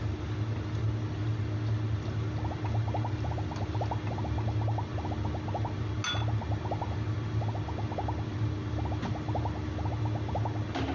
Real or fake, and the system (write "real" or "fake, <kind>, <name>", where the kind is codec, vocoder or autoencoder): real